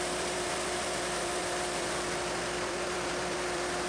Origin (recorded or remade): remade